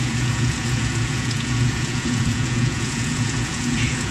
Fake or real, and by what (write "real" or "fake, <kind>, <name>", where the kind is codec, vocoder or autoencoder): fake, vocoder, Vocos